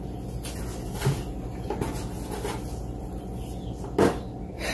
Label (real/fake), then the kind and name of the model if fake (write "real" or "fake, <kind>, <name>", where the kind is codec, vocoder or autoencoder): real